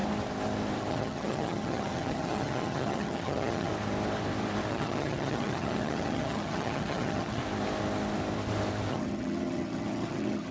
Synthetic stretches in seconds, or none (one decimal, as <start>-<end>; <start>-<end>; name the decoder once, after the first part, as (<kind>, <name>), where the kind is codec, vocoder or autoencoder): 0.9-3.7 (vocoder, HiFi-GAN); 4.7-7.4; 8.9-10.5